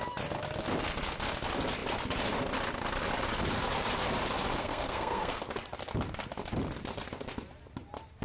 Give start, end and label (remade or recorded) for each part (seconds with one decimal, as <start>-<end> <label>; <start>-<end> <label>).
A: 0.0-4.6 recorded; 4.6-5.4 remade; 5.4-8.2 recorded